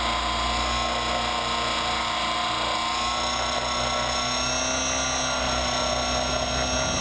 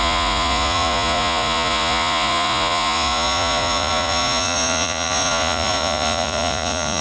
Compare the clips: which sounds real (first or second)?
first